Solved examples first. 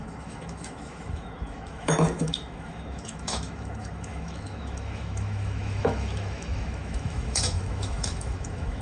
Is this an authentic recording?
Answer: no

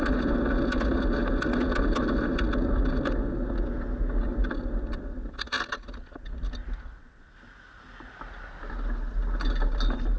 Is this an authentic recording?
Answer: yes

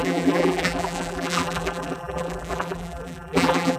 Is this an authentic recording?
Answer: no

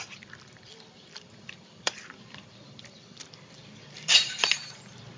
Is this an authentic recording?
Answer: no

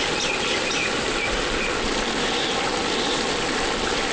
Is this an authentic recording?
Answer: yes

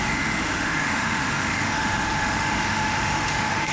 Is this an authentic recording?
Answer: no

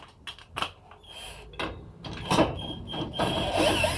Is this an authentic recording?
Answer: yes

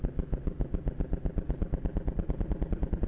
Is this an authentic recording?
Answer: yes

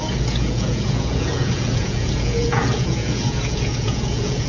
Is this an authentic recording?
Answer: no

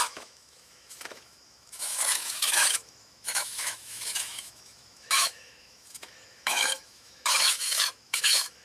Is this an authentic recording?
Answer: no